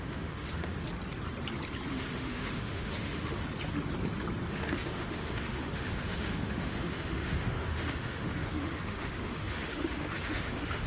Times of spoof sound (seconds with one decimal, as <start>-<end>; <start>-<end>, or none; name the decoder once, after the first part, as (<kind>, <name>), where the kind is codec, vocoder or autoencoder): 0.0-0.9 (autoencoder, DAC-VAE); 1.9-3.4; 4.5-10.9